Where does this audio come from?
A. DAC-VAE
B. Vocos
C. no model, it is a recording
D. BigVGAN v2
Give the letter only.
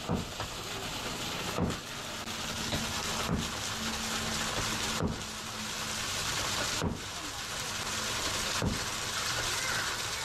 C